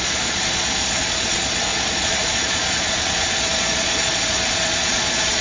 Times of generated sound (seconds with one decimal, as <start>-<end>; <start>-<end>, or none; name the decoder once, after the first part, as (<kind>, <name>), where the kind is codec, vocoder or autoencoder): 0.0-5.4 (vocoder, Vocos)